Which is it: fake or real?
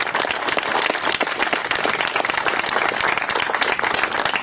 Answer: real